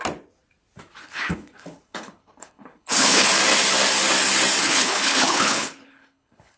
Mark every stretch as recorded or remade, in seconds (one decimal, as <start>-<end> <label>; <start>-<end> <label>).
0.0-1.0 recorded; 1.0-3.3 remade; 3.3-4.6 recorded; 4.6-6.6 remade